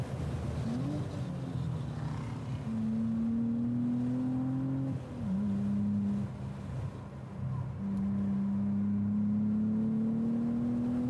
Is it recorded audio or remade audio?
recorded